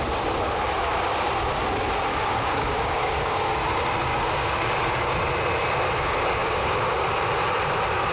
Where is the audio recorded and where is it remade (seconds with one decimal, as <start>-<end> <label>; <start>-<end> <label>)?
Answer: 0.0-2.1 recorded; 2.1-3.5 remade; 3.5-4.1 recorded; 4.1-5.0 remade; 5.0-6.4 recorded; 6.4-7.2 remade; 7.2-8.1 recorded